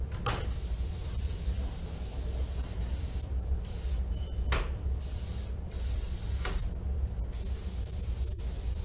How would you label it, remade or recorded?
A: recorded